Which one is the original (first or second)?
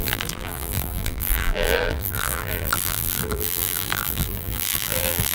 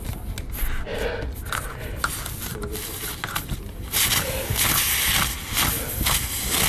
second